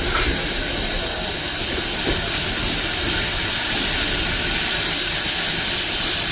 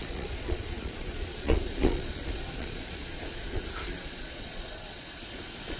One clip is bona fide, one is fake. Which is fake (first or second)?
second